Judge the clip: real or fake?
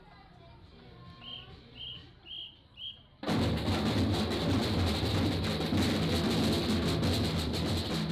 real